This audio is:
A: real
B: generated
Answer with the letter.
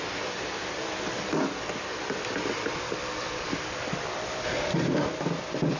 B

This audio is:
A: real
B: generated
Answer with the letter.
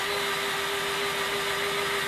A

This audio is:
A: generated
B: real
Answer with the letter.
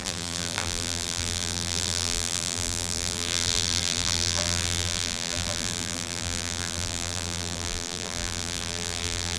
A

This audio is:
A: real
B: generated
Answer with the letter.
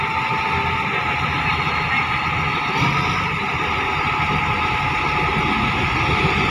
A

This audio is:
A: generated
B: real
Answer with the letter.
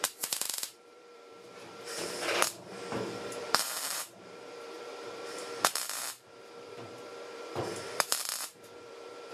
A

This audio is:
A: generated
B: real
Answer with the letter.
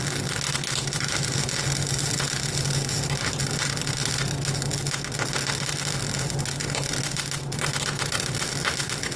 B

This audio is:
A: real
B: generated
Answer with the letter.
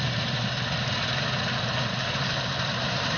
B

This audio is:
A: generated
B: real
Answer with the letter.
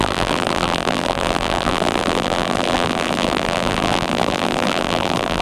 A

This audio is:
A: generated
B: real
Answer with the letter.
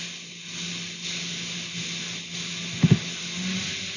B